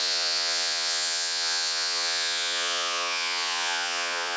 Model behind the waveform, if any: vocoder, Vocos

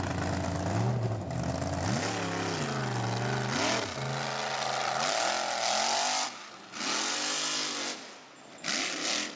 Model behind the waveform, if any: none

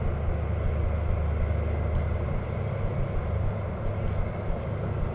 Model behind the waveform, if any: none